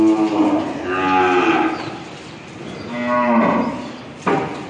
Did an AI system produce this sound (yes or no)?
no